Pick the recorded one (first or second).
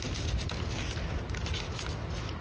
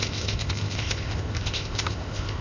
first